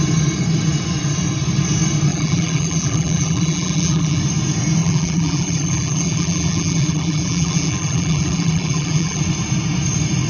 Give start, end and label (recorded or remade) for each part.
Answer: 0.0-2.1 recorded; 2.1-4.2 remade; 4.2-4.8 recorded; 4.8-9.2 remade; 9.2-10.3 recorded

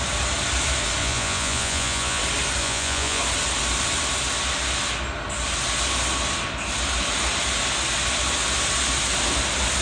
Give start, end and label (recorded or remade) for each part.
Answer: 0.0-1.0 recorded; 1.0-2.2 remade; 2.2-2.6 recorded; 2.6-3.2 remade; 3.2-9.8 recorded

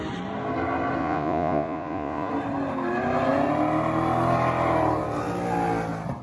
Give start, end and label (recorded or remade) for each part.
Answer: 0.0-1.0 recorded; 1.0-2.3 remade; 2.3-6.2 recorded

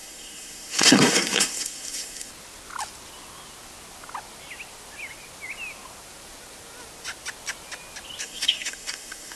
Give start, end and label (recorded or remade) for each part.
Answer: 0.0-2.3 remade; 2.3-8.2 recorded; 8.2-9.4 remade

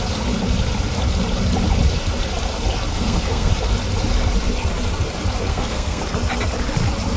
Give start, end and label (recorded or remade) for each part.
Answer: 0.0-2.9 recorded; 2.9-3.5 remade; 3.5-5.5 recorded; 5.5-6.0 remade; 6.0-7.2 recorded